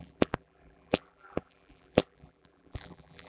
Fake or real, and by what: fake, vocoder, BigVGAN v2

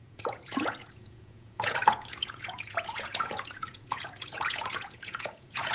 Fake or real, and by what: fake, vocoder, Vocos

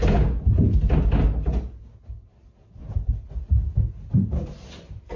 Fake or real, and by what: real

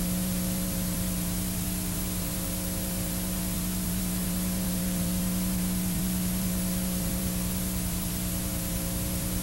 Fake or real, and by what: fake, vocoder, BigVGAN v2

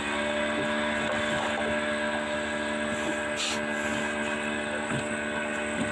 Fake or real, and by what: real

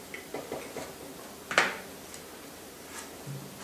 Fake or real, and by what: real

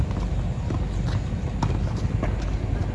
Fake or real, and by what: real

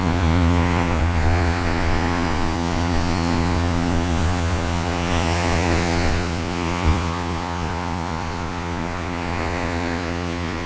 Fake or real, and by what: fake, vocoder, Vocos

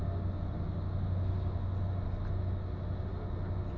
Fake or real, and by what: real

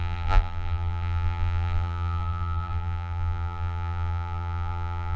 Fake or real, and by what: fake, vocoder, BigVGAN v2